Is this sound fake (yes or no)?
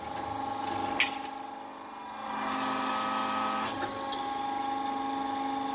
no